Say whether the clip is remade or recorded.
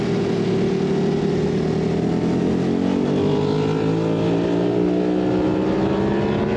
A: recorded